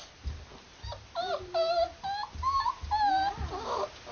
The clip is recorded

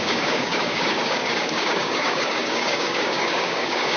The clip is remade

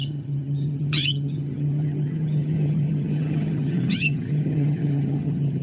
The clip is remade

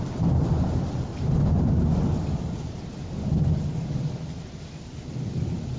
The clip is remade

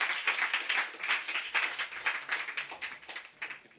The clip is recorded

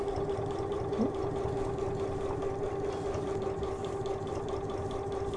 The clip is recorded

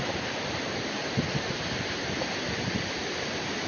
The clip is remade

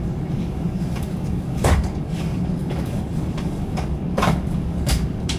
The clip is remade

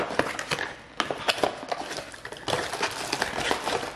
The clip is recorded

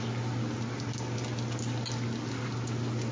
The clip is recorded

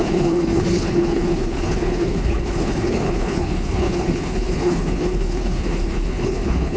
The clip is remade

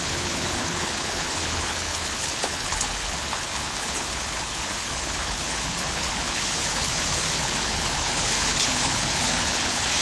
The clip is remade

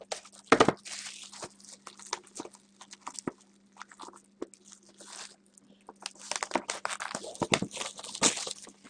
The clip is recorded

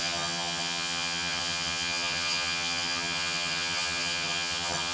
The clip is remade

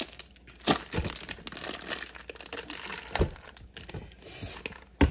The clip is recorded